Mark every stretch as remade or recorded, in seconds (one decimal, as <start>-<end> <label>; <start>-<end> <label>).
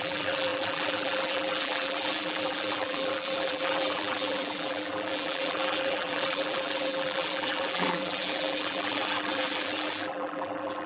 0.0-10.9 remade